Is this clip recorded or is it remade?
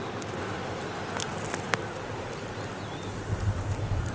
recorded